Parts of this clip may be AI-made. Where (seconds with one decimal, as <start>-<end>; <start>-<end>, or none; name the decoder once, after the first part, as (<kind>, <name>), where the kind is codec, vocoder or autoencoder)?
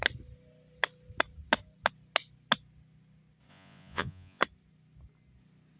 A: 3.5-4.4 (vocoder, Vocos)